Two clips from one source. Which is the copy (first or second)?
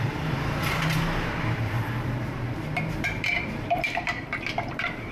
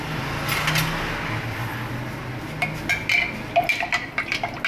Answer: first